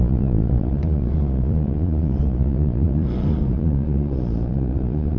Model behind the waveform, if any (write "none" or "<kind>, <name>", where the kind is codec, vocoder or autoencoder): vocoder, Vocos